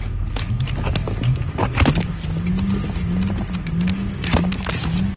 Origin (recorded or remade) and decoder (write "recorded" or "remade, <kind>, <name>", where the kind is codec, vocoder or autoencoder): recorded